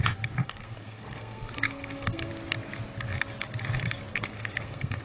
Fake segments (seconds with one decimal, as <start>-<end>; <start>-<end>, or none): 0.4-2.3; 4.1-5.0